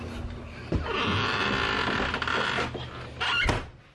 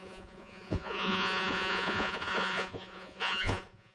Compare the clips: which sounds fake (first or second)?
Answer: second